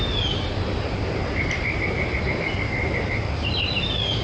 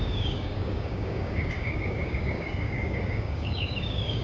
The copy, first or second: second